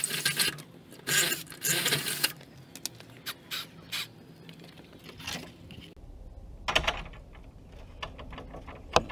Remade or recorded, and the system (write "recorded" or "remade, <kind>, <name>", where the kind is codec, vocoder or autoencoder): recorded